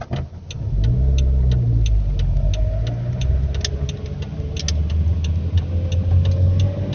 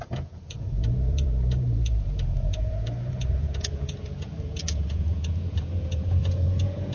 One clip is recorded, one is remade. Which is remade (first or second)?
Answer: second